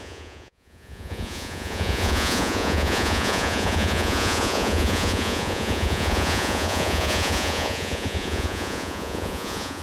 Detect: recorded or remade remade